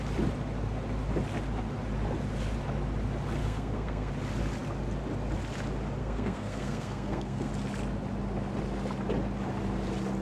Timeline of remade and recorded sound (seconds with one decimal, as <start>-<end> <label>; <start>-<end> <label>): 0.0-3.4 recorded; 3.4-4.1 remade; 4.1-6.0 recorded; 6.0-7.5 remade; 7.5-10.2 recorded

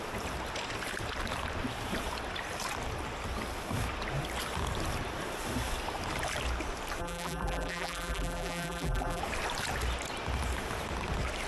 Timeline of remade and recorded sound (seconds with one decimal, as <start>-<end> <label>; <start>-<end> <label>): 0.0-7.0 recorded; 7.0-9.2 remade; 9.2-11.5 recorded